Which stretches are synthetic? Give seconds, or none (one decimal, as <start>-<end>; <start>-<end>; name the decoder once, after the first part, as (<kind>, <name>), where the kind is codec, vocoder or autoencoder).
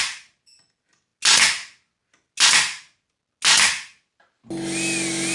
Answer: none